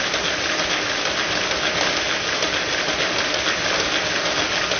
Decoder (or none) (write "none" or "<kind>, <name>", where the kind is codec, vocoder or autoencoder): none